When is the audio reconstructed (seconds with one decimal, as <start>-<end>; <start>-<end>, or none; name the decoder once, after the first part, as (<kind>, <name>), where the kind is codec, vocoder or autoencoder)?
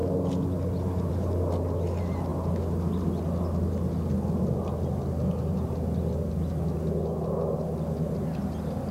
none